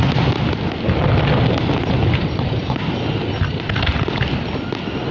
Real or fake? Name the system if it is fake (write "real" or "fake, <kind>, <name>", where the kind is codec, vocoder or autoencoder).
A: real